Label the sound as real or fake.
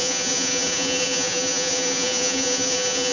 fake